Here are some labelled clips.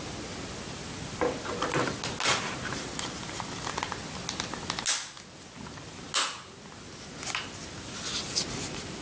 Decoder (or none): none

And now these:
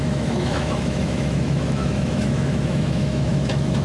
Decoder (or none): autoencoder, DAC-VAE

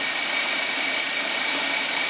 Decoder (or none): vocoder, BigVGAN v2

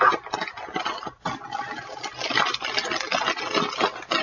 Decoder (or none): none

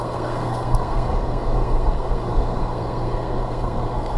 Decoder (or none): codec, SNAC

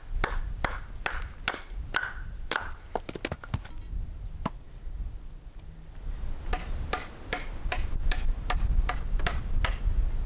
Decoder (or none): none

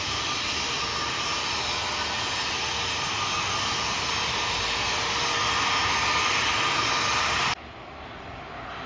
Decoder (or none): none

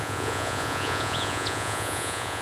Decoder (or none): vocoder, Vocos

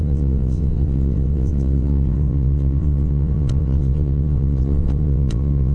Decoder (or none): vocoder, WaveNeXt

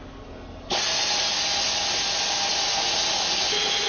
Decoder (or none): none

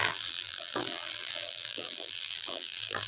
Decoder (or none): vocoder, BigVGAN v2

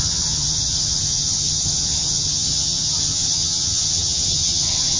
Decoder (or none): vocoder, HiFi-GAN